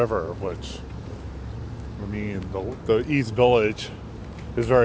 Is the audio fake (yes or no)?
yes